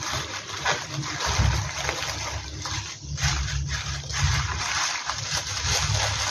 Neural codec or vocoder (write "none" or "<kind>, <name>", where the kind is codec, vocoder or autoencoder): none